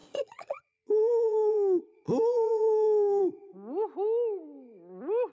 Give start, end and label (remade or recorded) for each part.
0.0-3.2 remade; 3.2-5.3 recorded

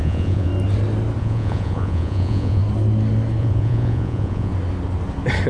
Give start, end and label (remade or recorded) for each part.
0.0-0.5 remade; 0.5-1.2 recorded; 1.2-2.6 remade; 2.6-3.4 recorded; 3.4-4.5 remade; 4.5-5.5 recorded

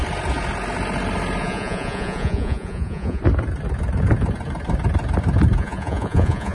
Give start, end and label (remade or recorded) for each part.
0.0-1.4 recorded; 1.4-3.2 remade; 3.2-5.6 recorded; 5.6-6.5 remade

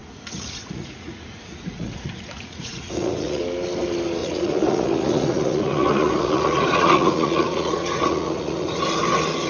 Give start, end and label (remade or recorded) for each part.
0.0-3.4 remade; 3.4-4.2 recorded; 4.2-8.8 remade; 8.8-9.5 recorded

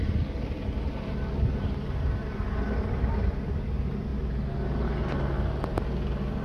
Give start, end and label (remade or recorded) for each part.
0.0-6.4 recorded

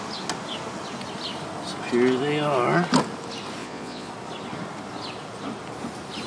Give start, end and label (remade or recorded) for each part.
0.0-3.6 recorded; 3.6-4.1 remade; 4.1-6.3 recorded

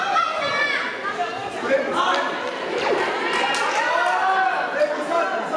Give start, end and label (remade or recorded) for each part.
0.0-5.6 recorded